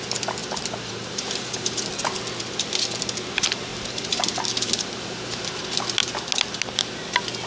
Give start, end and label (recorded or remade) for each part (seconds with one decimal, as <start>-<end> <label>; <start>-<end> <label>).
0.0-0.4 recorded; 0.4-1.8 remade; 1.8-3.7 recorded; 3.7-5.6 remade; 5.6-7.5 recorded